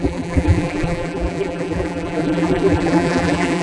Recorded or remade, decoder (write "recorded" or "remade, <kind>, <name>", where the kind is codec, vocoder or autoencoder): remade, vocoder, BigVGAN v2